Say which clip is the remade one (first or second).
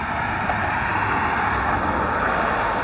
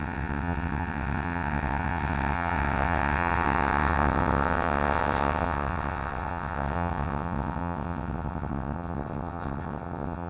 second